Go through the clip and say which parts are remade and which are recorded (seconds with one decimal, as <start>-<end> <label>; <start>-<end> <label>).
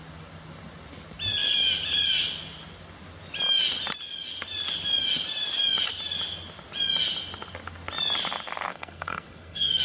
0.0-8.7 recorded; 8.7-9.8 remade